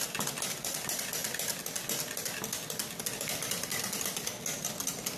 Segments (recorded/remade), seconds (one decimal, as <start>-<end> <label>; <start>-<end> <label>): 0.0-5.2 recorded